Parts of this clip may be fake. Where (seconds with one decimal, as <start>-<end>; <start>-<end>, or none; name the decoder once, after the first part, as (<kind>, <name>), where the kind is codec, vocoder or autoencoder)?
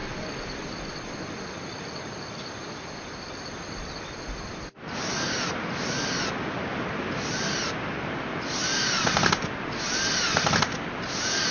0.0-0.6 (vocoder, BigVGAN v2)